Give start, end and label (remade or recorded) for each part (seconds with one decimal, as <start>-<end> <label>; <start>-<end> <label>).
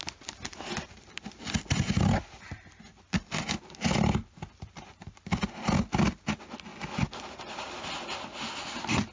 0.0-9.1 recorded